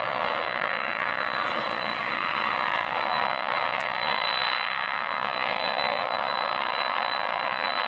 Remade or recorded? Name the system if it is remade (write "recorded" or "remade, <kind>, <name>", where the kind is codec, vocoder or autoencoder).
remade, vocoder, Vocos